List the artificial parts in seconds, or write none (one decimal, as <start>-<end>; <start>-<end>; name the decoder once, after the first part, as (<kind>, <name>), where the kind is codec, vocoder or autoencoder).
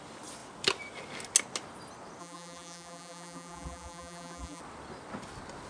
2.2-4.6 (vocoder, BigVGAN v2)